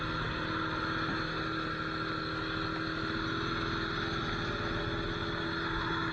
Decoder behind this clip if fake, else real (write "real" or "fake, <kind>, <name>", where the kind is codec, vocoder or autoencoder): real